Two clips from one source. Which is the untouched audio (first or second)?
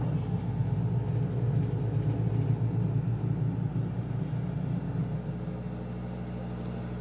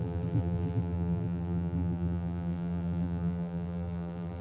first